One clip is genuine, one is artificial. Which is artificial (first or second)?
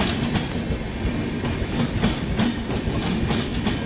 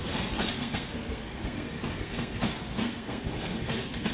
second